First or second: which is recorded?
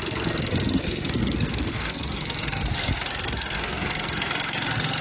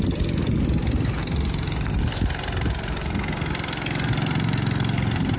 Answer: second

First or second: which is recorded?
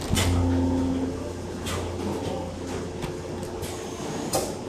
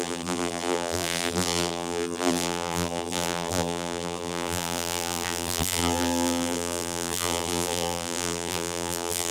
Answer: first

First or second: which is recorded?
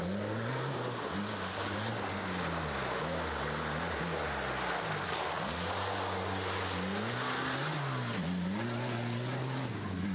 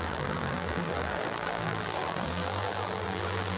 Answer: first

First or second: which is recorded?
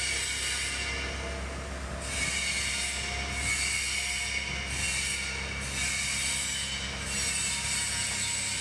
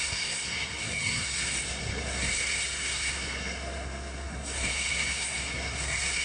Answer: first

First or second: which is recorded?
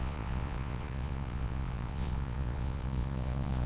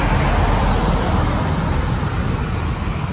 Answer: second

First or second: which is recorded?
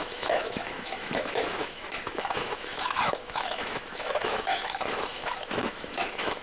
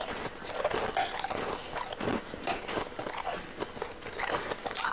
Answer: second